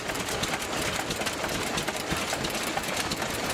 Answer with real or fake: real